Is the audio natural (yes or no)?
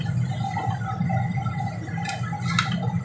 yes